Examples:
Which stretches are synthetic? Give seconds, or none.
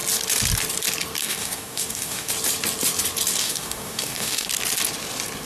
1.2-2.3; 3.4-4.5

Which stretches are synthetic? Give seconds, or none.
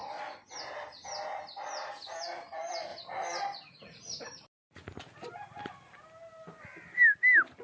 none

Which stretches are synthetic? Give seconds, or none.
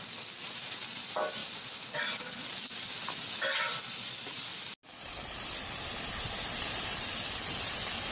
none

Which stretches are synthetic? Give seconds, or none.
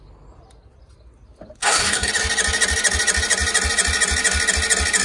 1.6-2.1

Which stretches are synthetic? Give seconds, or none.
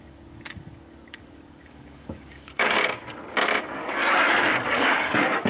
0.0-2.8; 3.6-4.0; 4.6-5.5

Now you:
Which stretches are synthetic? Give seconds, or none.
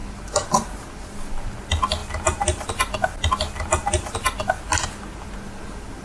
none